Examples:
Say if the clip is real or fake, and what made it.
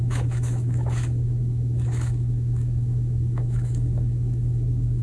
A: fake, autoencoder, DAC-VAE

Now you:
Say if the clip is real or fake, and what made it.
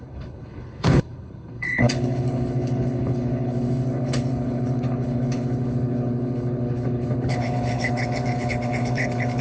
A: fake, codec, HILCodec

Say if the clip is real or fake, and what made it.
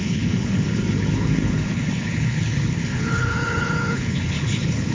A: fake, codec, HILCodec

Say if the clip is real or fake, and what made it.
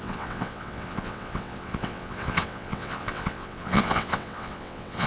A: fake, vocoder, WaveNeXt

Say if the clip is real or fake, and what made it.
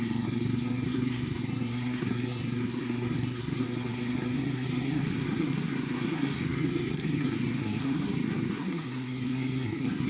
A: fake, codec, SNAC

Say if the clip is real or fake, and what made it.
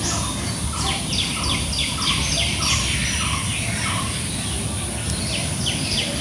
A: real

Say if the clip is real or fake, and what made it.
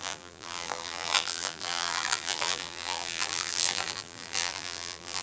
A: fake, vocoder, BigVGAN v2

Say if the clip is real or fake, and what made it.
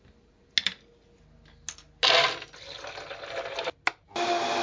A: real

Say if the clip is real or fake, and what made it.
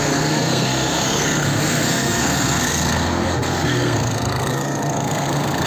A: fake, codec, SNAC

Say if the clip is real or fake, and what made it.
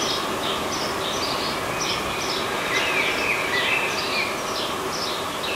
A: real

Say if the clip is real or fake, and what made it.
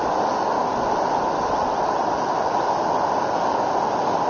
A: real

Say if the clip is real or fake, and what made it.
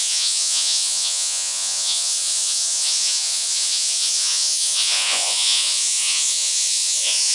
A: fake, vocoder, Vocos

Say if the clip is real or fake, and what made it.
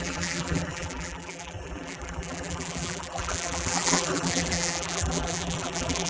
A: fake, vocoder, BigVGAN v2